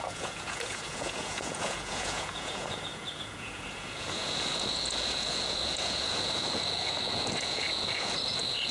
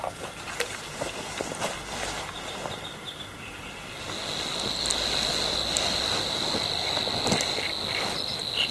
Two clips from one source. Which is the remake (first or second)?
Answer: first